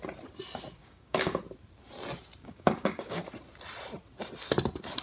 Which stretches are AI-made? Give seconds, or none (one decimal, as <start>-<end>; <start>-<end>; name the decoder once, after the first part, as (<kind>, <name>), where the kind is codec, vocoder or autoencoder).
0.8-1.4 (codec, DAC); 2.4-3.2